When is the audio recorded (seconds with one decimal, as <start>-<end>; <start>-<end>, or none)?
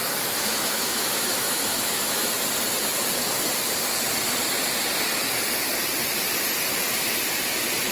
2.3-7.9